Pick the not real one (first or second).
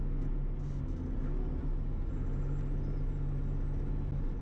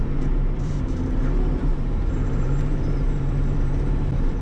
second